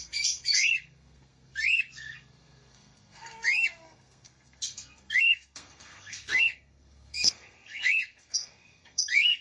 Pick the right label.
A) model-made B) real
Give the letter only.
A